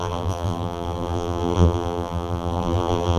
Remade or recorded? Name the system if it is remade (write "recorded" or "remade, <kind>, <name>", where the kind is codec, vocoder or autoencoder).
remade, vocoder, BigVGAN v2